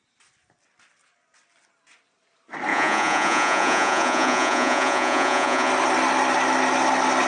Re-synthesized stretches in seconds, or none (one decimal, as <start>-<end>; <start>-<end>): 2.7-5.7